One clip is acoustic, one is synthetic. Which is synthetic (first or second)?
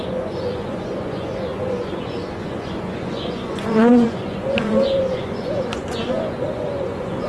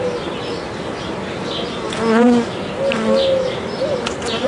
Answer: first